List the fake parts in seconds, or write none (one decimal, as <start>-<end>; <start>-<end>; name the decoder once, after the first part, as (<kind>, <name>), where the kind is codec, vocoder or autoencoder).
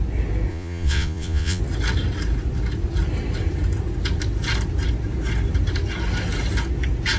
0.5-1.6 (vocoder, Vocos)